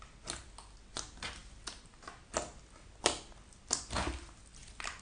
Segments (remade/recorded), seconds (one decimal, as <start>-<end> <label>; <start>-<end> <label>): 0.0-5.0 recorded